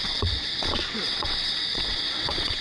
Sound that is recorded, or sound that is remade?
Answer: remade